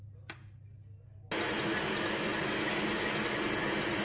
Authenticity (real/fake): real